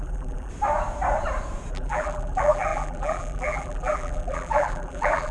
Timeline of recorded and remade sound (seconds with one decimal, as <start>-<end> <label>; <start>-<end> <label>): 0.0-0.5 remade; 0.5-1.7 recorded; 1.7-5.3 remade

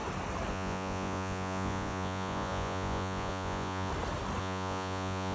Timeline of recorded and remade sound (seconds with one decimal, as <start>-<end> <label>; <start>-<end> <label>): 0.0-0.5 recorded; 0.5-3.9 remade; 3.9-4.4 recorded; 4.4-5.3 remade